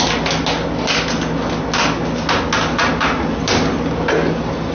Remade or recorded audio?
recorded